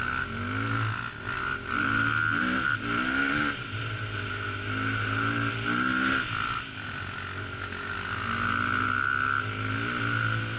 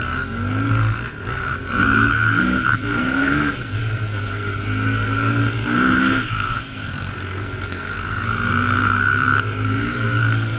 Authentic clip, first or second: first